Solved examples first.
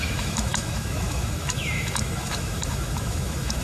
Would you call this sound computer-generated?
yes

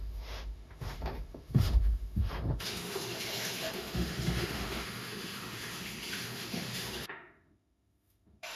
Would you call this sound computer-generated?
yes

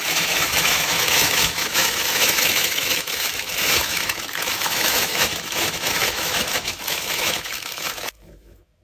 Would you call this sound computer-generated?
yes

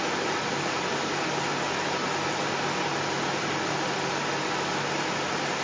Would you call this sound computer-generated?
no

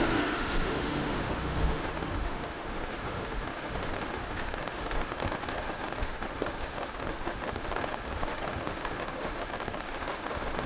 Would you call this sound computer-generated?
yes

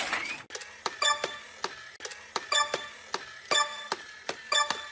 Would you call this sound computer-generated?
no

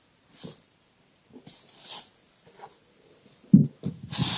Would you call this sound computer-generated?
no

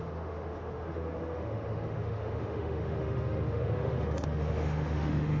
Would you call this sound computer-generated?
yes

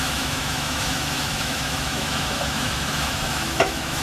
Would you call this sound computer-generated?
yes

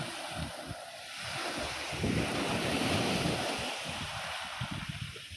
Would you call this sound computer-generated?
no